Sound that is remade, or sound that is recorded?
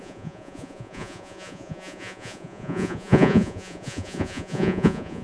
remade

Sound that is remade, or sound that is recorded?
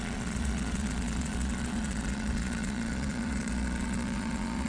remade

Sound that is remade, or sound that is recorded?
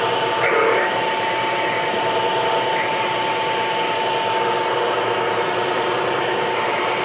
recorded